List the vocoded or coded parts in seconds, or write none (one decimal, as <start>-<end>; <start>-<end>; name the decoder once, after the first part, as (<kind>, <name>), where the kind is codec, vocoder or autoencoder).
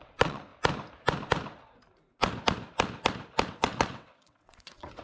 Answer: 0.0-0.5 (vocoder, WaveNeXt); 3.5-5.0